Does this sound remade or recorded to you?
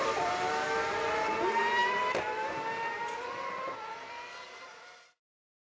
recorded